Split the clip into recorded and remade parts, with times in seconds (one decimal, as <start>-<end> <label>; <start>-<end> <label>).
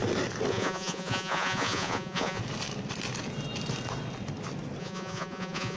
0.0-0.5 recorded; 0.5-2.4 remade; 2.4-4.8 recorded; 4.8-5.8 remade